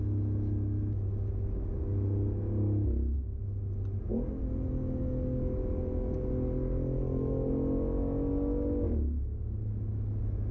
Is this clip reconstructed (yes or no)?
no